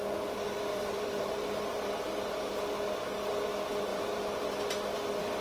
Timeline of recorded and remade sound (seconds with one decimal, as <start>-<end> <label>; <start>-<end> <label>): 0.0-0.7 recorded; 0.7-2.5 remade; 2.5-3.9 recorded; 3.9-4.5 remade; 4.5-5.4 recorded

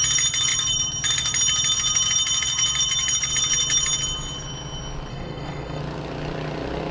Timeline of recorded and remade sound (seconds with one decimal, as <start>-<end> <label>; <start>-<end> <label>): 0.0-5.1 recorded; 5.1-5.8 remade; 5.8-6.9 recorded

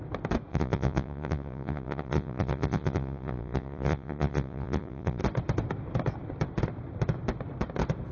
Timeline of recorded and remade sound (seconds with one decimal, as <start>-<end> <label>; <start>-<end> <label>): 0.0-0.5 recorded; 0.5-5.2 remade; 5.2-8.1 recorded

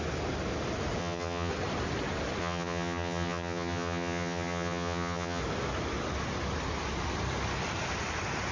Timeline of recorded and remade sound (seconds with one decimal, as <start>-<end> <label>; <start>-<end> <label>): 0.0-1.0 recorded; 1.0-1.5 remade; 1.5-2.4 recorded; 2.4-5.4 remade; 5.4-8.5 recorded

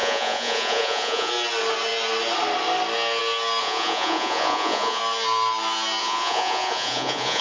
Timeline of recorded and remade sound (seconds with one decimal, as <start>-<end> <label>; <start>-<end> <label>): 0.0-1.3 remade; 1.3-3.6 recorded; 3.6-5.0 remade; 5.0-6.0 recorded; 6.0-7.4 remade